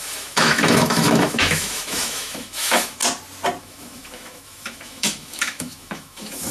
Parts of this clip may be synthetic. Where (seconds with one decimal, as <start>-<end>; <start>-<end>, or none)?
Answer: 0.0-3.0; 3.6-6.5